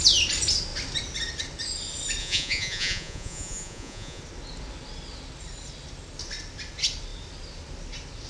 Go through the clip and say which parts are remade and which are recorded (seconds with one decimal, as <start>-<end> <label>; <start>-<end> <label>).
0.0-2.2 recorded; 2.2-4.2 remade; 4.2-8.3 recorded